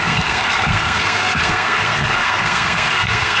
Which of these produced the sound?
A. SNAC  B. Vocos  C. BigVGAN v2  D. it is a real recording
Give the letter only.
A